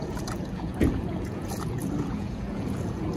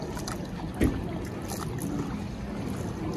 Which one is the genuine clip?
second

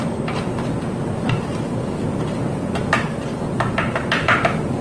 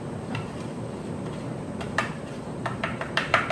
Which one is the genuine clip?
first